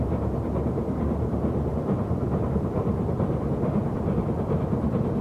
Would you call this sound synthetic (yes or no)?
yes